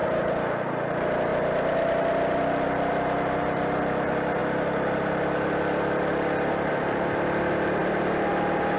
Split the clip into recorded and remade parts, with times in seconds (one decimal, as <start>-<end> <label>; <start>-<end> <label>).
0.0-7.8 recorded; 7.8-8.3 remade; 8.3-8.8 recorded